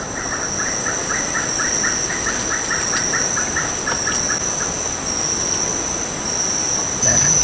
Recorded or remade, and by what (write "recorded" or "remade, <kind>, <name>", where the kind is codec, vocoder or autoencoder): recorded